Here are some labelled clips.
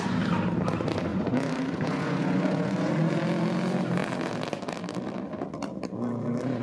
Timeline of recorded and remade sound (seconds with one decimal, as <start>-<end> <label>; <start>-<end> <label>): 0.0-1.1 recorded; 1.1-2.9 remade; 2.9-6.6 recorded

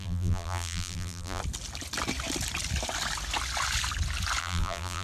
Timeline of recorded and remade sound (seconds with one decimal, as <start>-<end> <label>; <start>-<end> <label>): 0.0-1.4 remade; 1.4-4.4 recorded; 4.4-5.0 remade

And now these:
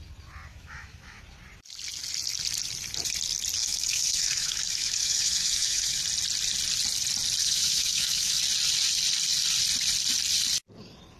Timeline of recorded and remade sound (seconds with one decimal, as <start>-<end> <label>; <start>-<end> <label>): 0.0-0.5 recorded; 0.5-1.2 remade; 1.2-3.6 recorded; 3.6-6.0 remade; 6.0-7.4 recorded; 7.4-8.4 remade; 8.4-11.2 recorded